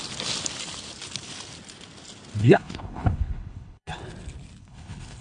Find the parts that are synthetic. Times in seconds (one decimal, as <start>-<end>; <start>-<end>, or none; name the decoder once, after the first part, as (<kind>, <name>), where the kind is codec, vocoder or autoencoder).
2.4-4.0 (codec, HILCodec); 4.6-5.2